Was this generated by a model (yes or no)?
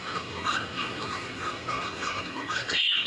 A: yes